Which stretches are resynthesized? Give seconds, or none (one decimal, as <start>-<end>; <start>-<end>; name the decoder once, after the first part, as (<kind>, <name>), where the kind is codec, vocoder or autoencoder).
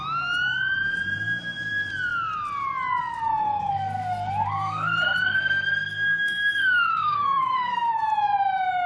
3.4-8.0 (codec, SNAC)